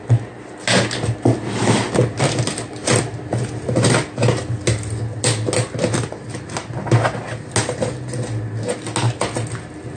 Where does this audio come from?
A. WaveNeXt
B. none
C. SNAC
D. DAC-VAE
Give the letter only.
B